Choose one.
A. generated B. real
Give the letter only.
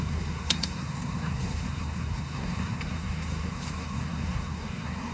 A